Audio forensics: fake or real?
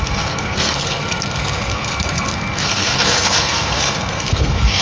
fake